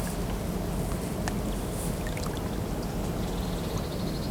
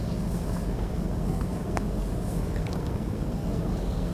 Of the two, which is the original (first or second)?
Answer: first